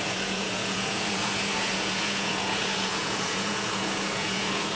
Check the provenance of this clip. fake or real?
fake